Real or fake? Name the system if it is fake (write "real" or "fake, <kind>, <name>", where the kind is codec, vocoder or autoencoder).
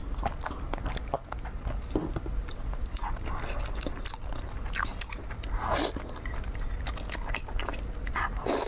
real